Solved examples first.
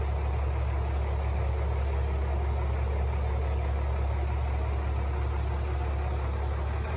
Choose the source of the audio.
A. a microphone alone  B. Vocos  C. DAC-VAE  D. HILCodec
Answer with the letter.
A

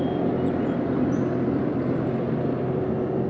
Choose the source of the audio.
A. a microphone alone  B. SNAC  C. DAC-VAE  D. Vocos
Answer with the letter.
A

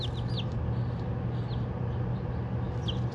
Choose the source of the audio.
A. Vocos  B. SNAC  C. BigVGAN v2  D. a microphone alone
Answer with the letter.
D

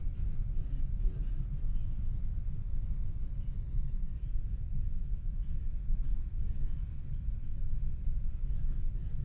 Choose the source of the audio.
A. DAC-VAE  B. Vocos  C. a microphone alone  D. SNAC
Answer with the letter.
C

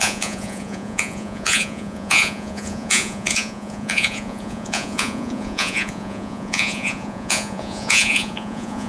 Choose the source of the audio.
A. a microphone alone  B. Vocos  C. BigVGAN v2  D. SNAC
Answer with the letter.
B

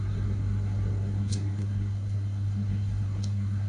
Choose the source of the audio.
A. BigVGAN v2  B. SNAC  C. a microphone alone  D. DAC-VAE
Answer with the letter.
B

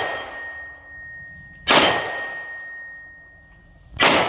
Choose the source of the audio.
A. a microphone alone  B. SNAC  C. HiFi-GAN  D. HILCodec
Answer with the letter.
A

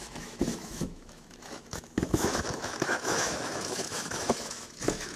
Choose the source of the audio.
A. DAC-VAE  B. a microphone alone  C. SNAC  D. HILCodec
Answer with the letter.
A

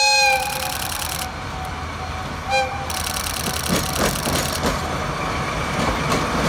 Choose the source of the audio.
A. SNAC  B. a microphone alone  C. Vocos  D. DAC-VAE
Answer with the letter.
B